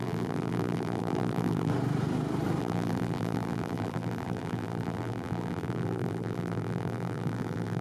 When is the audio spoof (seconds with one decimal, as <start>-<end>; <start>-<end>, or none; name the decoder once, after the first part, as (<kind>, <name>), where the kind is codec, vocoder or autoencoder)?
0.0-1.7 (vocoder, BigVGAN v2); 2.6-7.8